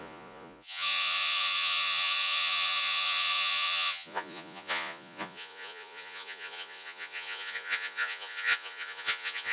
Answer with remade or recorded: remade